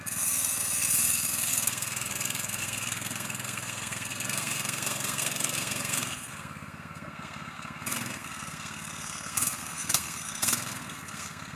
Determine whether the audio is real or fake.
fake